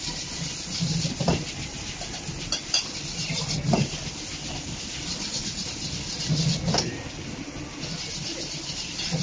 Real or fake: real